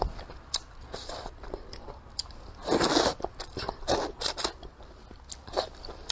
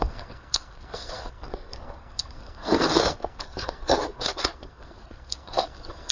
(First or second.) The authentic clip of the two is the first